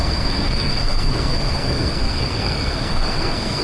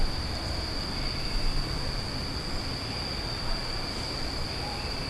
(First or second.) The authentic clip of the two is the second